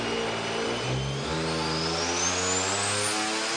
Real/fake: real